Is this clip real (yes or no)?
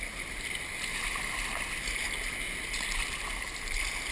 yes